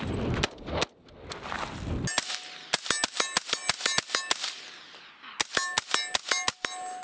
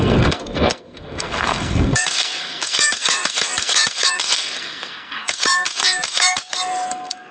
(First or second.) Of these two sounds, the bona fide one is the first